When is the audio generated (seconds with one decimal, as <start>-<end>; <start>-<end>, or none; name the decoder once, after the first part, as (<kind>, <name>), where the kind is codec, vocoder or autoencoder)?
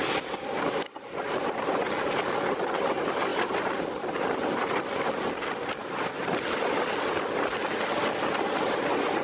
none